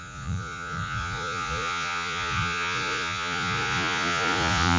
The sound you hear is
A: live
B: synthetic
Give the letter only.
B